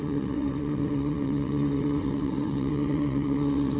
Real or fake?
fake